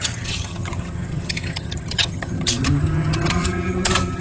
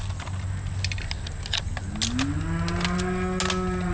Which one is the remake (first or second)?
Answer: first